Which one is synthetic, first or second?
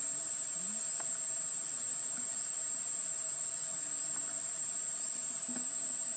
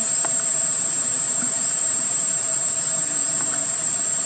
second